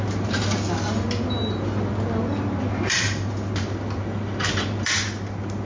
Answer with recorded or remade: recorded